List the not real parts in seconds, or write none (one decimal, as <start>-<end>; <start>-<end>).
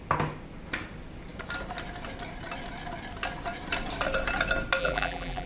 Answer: 4.8-5.5